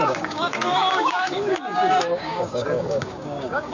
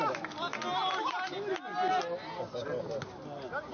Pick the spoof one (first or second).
first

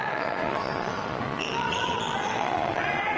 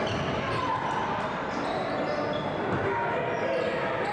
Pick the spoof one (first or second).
first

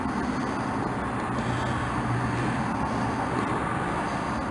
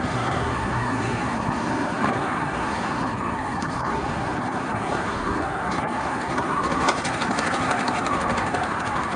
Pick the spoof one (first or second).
second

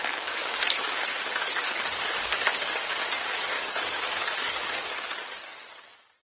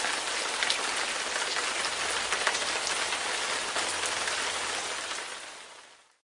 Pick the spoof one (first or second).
first